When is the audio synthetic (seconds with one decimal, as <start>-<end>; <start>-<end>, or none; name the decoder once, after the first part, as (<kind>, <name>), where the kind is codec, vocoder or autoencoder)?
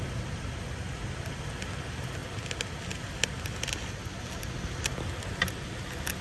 none